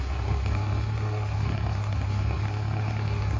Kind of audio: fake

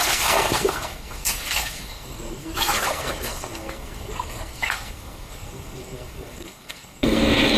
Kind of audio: fake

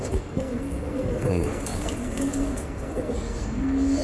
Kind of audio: fake